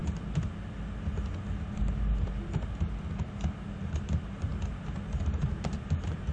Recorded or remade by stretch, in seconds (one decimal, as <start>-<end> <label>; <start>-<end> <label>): 0.0-3.8 recorded; 3.8-4.5 remade; 4.5-5.2 recorded; 5.2-6.3 remade